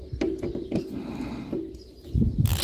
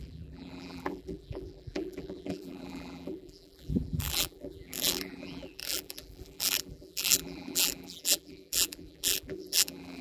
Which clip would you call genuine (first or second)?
first